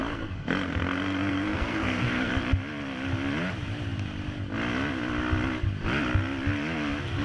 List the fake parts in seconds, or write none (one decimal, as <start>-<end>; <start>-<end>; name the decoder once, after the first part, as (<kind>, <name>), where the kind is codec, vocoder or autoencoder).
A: 0.0-2.3 (codec, SNAC)